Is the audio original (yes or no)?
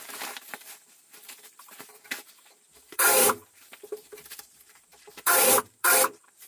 no